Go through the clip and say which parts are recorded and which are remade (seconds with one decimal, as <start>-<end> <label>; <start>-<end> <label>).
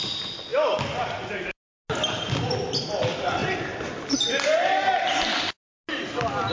0.0-6.5 recorded